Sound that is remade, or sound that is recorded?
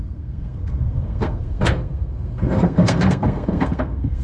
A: remade